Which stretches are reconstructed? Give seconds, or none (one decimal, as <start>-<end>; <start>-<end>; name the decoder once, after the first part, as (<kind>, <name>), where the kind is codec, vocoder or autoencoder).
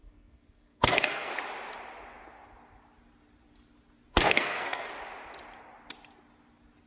0.0-1.3 (codec, SNAC); 4.1-4.9